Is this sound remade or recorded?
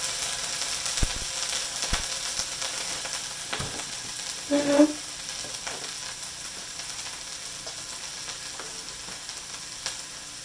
recorded